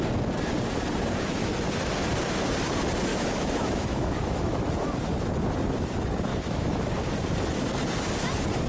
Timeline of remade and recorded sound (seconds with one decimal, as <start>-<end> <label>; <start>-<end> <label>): 0.0-3.1 recorded; 3.1-4.7 remade; 4.7-6.3 recorded; 6.3-6.9 remade; 6.9-8.7 recorded